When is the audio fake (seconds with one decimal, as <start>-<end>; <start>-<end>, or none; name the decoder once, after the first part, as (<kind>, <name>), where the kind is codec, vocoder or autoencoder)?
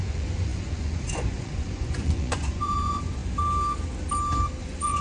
0.0-3.2 (vocoder, Vocos); 4.6-5.0